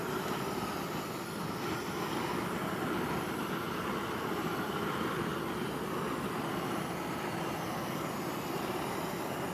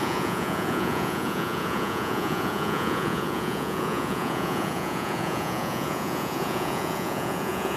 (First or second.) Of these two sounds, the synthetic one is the second